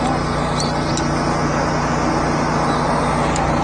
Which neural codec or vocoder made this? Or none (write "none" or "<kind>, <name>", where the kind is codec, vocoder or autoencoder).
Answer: none